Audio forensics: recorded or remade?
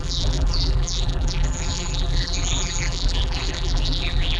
remade